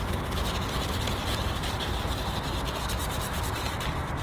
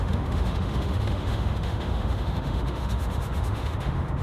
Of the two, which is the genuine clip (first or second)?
first